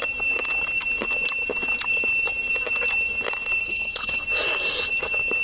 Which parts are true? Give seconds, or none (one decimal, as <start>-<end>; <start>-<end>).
0.0-3.6; 4.2-5.4